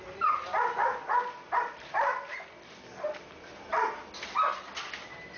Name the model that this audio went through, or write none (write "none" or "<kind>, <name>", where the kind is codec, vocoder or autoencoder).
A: none